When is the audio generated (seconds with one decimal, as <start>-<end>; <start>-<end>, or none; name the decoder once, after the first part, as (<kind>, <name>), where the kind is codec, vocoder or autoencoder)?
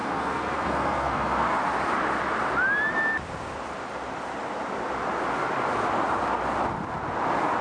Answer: 0.0-1.6 (codec, SNAC)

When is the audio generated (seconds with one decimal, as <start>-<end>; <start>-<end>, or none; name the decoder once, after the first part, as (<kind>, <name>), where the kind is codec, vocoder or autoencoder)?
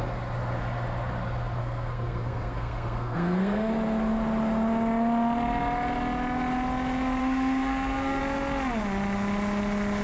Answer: 1.6-3.7 (codec, SNAC); 7.2-8.2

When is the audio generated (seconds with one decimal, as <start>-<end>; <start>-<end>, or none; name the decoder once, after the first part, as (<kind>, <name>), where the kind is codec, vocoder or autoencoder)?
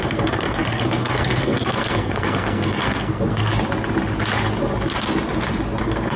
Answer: 0.0-3.5 (codec, SNAC); 5.8-6.2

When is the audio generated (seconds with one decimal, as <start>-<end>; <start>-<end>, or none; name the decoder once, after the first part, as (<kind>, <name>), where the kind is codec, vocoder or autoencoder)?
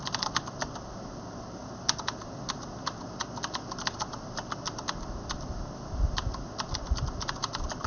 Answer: none